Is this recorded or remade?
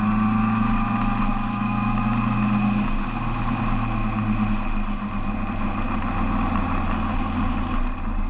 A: recorded